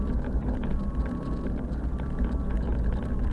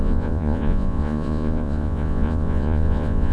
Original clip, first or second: first